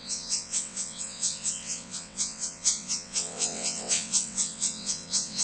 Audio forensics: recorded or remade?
remade